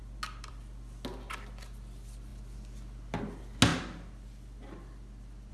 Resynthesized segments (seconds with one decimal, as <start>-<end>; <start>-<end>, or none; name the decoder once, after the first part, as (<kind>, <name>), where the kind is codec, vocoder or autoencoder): none